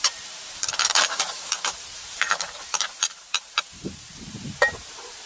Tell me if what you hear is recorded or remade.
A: remade